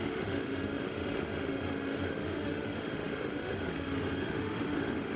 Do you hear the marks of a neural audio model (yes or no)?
yes